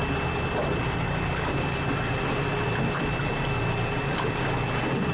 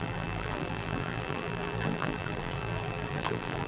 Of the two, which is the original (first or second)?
first